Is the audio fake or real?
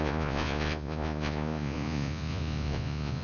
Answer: fake